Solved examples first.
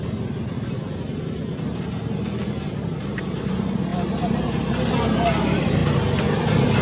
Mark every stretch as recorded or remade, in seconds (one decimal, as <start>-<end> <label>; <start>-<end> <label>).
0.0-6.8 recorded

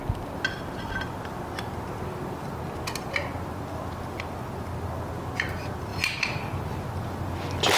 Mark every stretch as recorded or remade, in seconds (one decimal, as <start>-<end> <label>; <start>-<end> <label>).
0.0-7.8 recorded

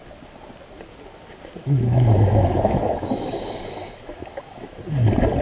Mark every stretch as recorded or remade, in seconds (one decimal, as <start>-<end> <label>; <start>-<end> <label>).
0.0-1.6 recorded; 1.6-4.8 remade; 4.8-5.4 recorded

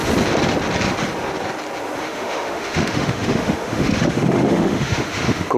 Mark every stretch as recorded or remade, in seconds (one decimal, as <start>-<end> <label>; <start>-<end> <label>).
0.0-2.0 recorded; 2.0-5.6 remade

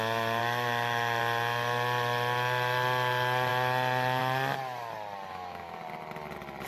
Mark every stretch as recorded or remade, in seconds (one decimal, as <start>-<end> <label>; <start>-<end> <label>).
0.0-0.4 recorded; 0.4-1.2 remade; 1.2-5.3 recorded; 5.3-5.8 remade; 5.8-6.7 recorded

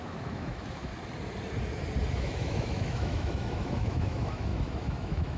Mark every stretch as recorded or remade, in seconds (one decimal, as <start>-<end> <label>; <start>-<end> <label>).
0.0-0.9 remade; 0.9-2.1 recorded; 2.1-5.4 remade

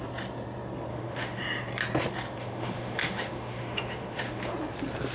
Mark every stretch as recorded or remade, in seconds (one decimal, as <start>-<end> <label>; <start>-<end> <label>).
0.0-0.9 recorded; 0.9-1.4 remade; 1.4-2.4 recorded; 2.4-4.5 remade; 4.5-5.1 recorded

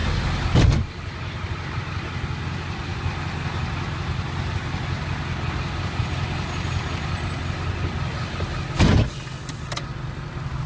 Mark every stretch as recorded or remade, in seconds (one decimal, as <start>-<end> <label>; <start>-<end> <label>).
0.0-10.7 recorded